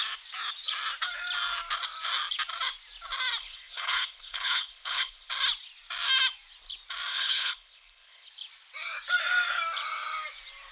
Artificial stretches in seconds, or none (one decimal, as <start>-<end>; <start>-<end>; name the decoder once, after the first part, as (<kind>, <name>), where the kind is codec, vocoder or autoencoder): 3.4-5.3 (codec, HILCodec); 7.1-8.3